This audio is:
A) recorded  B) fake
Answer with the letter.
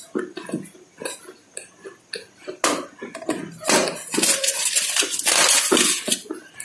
A